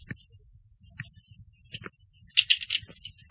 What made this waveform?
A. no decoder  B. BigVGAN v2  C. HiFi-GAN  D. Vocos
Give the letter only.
A